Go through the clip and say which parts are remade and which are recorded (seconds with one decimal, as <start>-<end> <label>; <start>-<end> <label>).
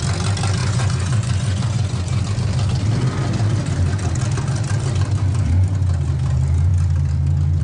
0.0-0.6 recorded; 0.6-2.2 remade; 2.2-7.6 recorded